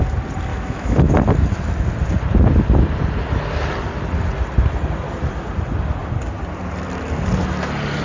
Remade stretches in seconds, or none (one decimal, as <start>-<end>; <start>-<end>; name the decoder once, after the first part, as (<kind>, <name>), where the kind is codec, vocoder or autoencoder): 0.5-1.1 (autoencoder, DAC-VAE)